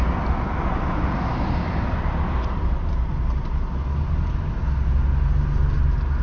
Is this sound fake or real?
real